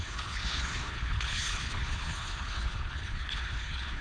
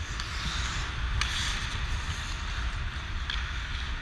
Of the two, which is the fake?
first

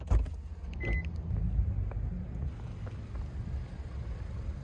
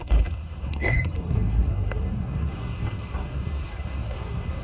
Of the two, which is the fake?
second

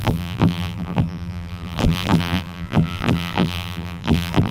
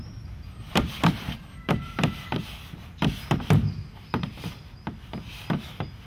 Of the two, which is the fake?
first